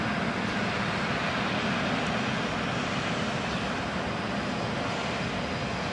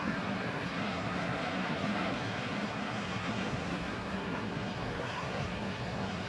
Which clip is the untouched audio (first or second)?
first